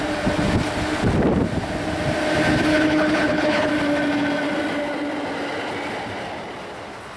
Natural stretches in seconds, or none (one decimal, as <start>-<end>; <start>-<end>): 0.0-2.7; 3.7-7.2